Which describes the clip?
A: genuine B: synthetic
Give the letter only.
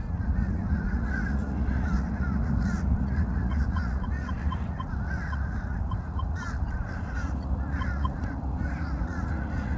B